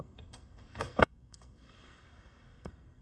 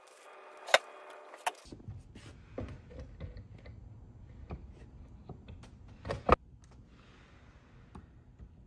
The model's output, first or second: first